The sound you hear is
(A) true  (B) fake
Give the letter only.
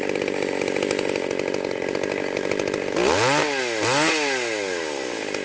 A